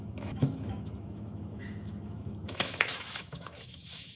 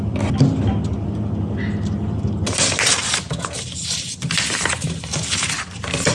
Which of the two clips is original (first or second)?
second